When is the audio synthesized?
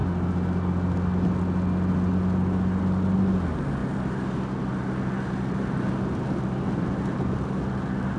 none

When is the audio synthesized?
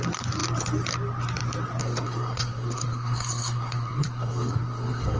1.8-5.2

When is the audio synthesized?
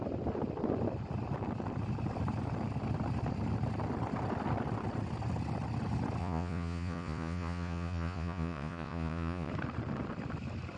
6.2-9.5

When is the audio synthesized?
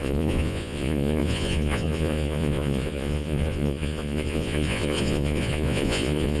0.0-6.4